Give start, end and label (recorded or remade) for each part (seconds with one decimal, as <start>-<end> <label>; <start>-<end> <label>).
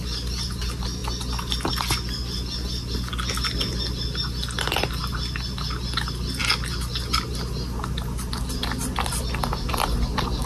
0.0-10.5 recorded